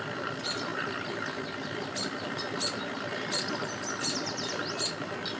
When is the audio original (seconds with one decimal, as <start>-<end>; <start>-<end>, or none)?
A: 0.0-5.4